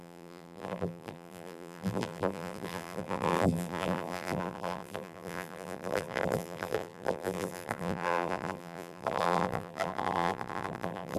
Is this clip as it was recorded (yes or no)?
no